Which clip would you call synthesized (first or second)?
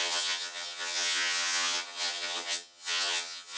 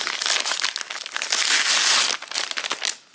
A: first